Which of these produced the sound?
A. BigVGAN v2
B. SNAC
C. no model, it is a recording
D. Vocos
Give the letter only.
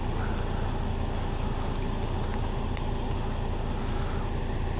C